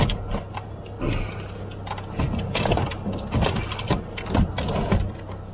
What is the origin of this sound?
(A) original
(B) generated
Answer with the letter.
A